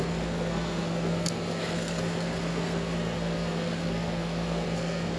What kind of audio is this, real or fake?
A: fake